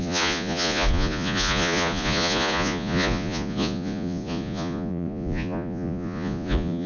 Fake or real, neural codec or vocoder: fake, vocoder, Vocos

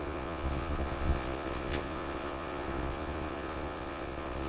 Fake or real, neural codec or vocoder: fake, vocoder, Vocos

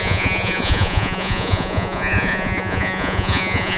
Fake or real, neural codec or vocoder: fake, vocoder, Vocos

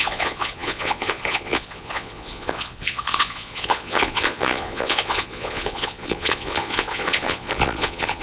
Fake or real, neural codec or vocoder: fake, vocoder, Vocos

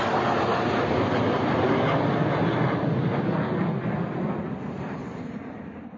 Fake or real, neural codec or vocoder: real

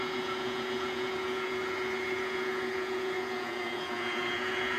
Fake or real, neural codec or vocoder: fake, vocoder, Vocos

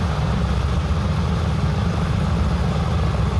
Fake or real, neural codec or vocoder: real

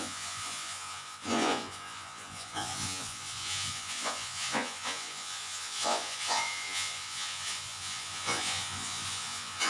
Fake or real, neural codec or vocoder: fake, vocoder, Vocos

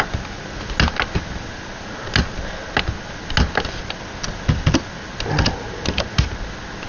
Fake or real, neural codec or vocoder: real